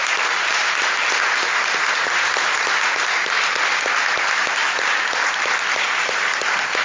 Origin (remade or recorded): recorded